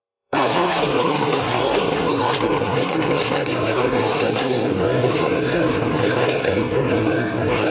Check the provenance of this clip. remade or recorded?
remade